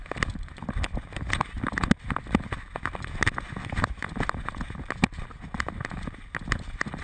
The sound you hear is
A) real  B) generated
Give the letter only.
A